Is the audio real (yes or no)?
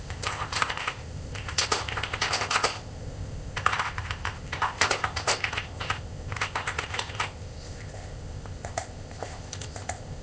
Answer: no